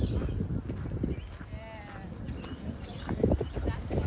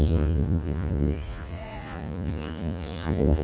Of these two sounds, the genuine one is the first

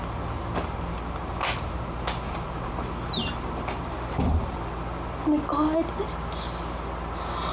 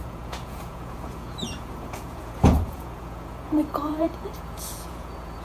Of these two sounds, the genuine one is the first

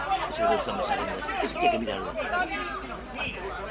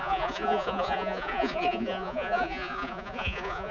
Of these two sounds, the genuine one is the first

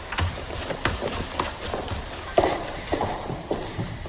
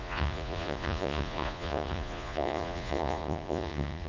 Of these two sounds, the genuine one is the first